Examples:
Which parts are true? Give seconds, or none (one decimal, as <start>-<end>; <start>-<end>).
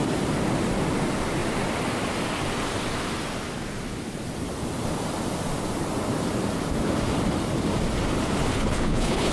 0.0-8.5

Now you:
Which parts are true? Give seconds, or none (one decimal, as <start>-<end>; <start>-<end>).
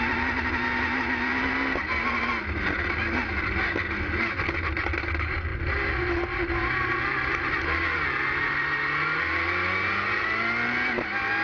0.0-11.4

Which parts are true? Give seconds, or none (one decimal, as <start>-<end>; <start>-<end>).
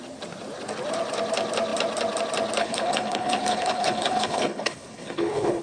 0.0-2.6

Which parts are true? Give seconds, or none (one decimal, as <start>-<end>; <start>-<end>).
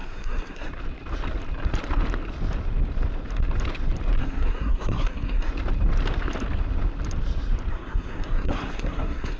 0.7-4.2; 5.5-7.7